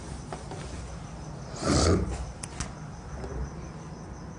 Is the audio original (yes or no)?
yes